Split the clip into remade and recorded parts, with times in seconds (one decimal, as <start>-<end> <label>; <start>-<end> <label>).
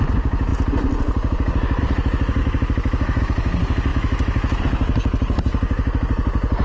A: 0.0-2.4 recorded; 2.4-3.2 remade; 3.2-3.9 recorded; 3.9-4.6 remade; 4.6-6.6 recorded